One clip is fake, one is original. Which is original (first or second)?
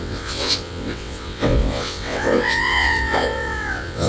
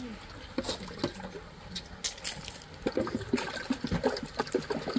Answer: second